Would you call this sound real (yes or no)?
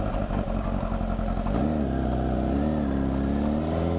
yes